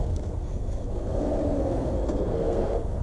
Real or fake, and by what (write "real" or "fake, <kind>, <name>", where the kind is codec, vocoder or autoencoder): fake, codec, SNAC